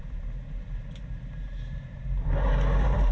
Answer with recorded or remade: remade